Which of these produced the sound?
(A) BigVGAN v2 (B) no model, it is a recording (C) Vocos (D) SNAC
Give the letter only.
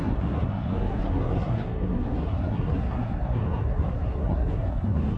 D